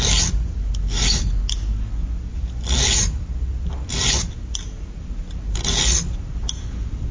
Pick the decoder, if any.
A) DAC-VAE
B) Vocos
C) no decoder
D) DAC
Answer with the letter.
C